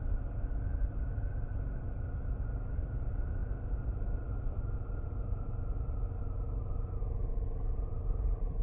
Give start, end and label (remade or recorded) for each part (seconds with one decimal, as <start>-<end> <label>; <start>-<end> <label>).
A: 0.0-8.6 recorded